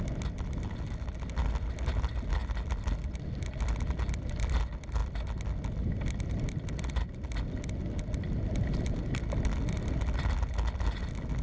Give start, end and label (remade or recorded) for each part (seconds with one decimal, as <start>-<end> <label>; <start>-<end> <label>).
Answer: 0.0-11.4 recorded